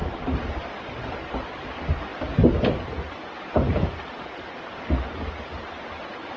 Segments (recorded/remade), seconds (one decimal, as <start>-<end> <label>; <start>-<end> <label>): 0.0-0.7 remade; 0.7-6.4 recorded